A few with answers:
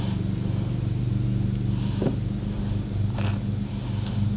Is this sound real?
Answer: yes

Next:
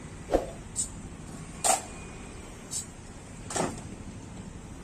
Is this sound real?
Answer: yes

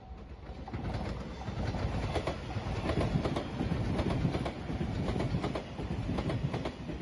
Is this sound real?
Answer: yes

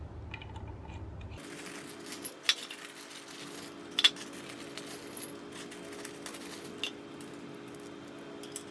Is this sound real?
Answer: yes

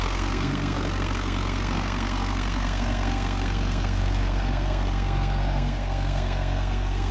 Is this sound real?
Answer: no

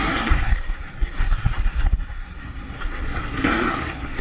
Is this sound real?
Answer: no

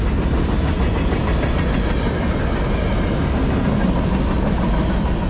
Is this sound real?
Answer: yes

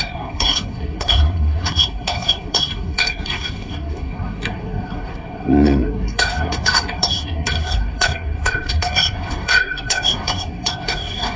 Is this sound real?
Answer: no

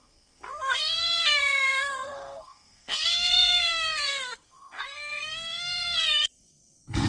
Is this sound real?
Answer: no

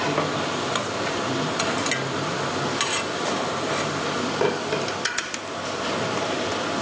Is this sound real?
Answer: yes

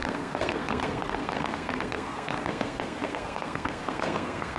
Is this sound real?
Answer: no